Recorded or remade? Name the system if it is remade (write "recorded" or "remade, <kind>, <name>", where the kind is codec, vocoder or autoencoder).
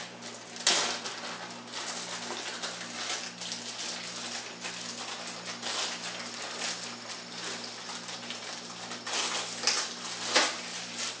recorded